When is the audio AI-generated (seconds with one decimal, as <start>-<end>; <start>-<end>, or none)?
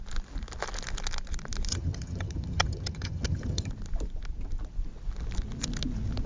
1.7-3.7